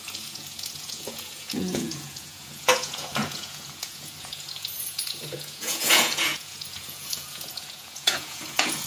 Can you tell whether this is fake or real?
fake